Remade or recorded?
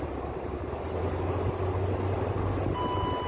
recorded